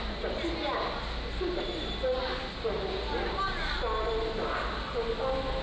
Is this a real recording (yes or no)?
yes